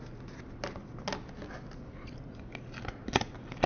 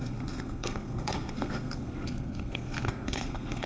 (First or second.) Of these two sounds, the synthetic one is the second